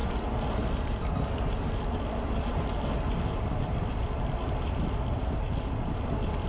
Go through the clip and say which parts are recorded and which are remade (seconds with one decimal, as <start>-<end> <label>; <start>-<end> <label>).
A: 0.0-6.5 recorded